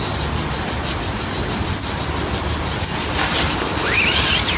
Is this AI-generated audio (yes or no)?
no